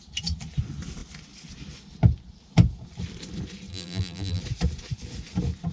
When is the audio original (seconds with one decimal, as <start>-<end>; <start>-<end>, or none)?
0.0-3.7; 4.4-5.7